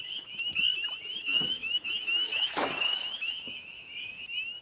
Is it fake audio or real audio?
fake